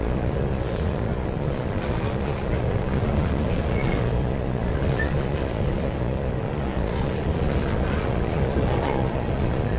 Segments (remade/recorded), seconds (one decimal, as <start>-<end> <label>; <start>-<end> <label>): 0.0-9.8 remade